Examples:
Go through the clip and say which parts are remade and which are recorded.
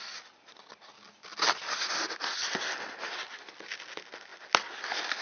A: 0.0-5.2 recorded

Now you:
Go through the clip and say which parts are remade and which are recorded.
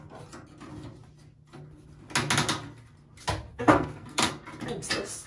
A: 0.0-3.5 recorded; 3.5-4.3 remade; 4.3-5.3 recorded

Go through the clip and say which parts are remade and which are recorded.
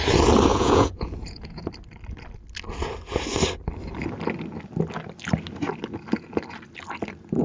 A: 0.0-0.5 recorded; 0.5-1.7 remade; 1.7-7.4 recorded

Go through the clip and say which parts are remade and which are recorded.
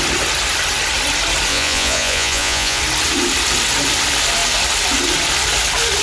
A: 0.0-1.5 recorded; 1.5-2.8 remade; 2.8-6.0 recorded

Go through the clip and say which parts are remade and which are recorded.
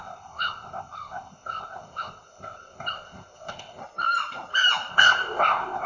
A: 0.0-3.8 remade; 3.8-4.9 recorded; 4.9-5.9 remade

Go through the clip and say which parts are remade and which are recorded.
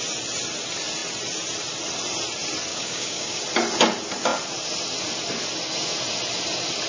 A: 0.0-2.7 recorded; 2.7-3.4 remade; 3.4-6.9 recorded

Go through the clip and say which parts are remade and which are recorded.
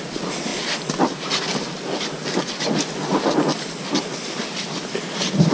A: 0.0-0.5 remade; 0.5-3.8 recorded; 3.8-5.5 remade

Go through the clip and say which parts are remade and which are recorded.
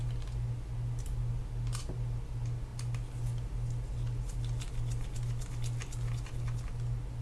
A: 0.0-7.2 recorded